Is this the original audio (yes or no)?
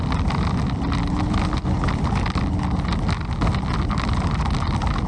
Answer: yes